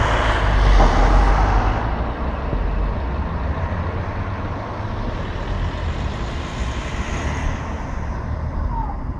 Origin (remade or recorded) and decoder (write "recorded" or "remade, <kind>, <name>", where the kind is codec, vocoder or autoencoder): recorded